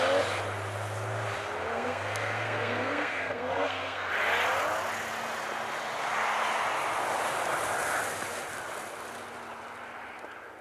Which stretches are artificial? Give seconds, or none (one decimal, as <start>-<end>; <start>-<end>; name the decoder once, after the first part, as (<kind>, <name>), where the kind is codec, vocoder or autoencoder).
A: 1.7-4.1 (codec, SNAC)